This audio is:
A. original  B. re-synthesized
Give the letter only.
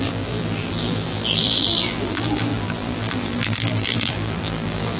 B